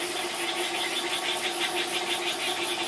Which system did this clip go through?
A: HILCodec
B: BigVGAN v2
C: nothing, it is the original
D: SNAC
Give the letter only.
C